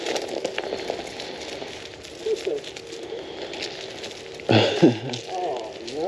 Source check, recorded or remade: recorded